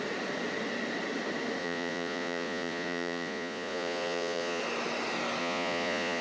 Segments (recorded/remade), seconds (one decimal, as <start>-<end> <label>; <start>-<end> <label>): 0.0-1.6 recorded; 1.6-4.6 remade; 4.6-5.4 recorded; 5.4-6.2 remade